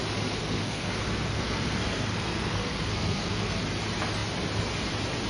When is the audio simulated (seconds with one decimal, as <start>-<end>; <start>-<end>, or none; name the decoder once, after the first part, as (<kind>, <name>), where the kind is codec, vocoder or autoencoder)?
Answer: 0.4-3.6 (codec, SNAC)